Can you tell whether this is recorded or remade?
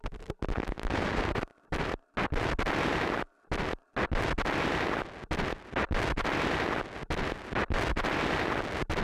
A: recorded